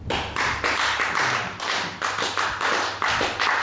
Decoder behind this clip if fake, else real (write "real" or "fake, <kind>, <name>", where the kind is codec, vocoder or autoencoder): real